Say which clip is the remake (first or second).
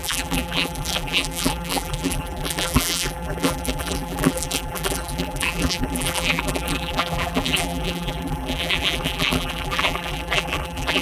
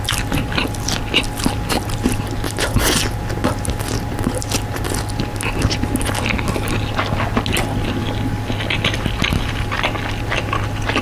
first